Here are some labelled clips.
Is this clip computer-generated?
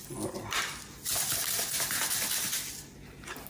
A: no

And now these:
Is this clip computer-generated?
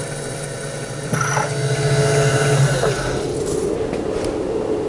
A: no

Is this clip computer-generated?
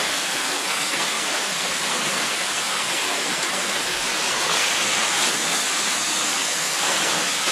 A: yes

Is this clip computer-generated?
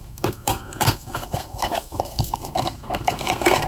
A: yes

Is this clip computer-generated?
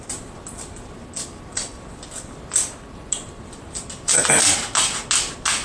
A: no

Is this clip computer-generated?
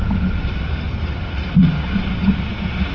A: no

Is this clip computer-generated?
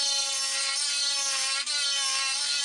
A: no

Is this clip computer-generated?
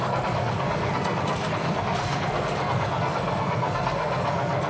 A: yes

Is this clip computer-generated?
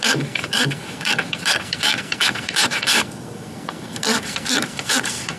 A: yes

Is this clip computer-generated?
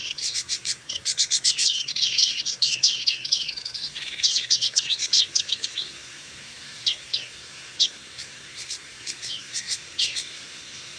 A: yes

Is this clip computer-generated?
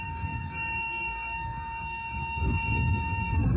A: yes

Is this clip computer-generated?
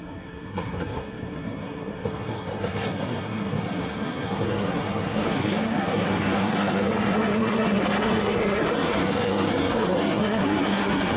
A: yes